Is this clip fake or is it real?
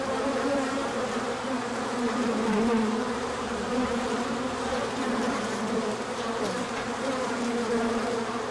fake